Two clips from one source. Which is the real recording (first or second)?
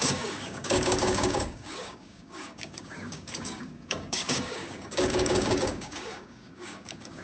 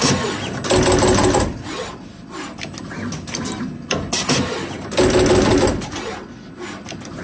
second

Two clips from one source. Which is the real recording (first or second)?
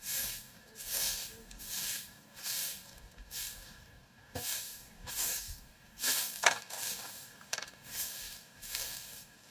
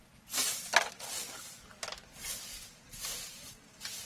second